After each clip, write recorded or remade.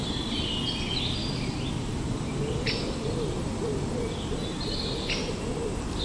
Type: recorded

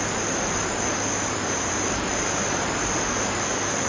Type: remade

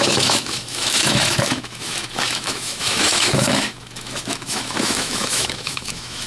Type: remade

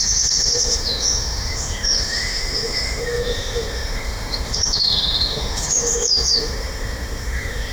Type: remade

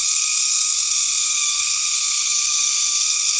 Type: remade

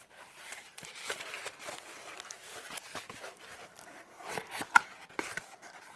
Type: remade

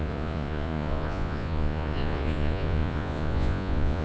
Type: remade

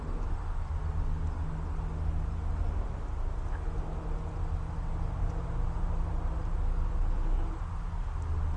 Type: recorded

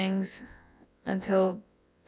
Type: remade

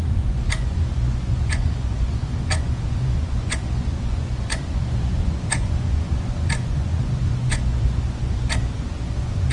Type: remade